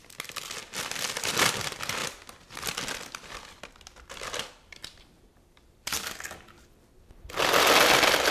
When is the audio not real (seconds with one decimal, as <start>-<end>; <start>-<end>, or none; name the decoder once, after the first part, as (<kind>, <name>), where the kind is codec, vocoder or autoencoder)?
0.6-2.0 (vocoder, BigVGAN v2); 2.7-8.3